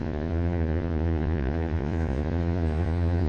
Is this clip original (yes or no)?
no